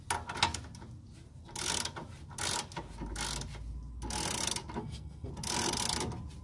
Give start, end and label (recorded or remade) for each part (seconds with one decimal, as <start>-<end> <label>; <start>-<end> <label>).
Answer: 0.0-4.8 recorded; 4.8-5.3 remade; 5.3-6.4 recorded